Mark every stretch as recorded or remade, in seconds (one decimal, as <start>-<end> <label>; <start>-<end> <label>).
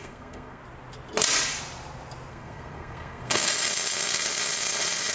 0.0-0.6 remade; 0.6-2.3 recorded; 2.3-3.5 remade; 3.5-5.1 recorded